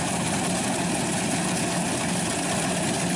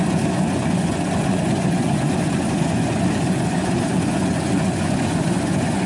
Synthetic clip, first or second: second